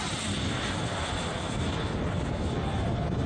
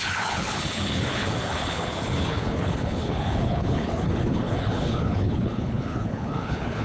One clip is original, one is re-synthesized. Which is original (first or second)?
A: first